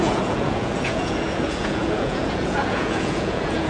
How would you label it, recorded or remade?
remade